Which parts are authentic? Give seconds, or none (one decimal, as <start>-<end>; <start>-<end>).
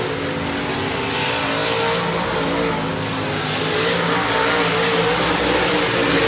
0.0-6.3